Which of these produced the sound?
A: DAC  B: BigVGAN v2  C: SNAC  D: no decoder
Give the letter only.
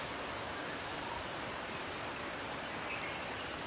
D